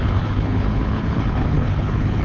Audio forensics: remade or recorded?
remade